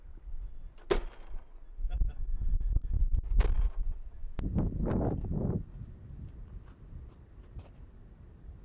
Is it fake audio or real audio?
real